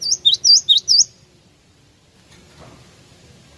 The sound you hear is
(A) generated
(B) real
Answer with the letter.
B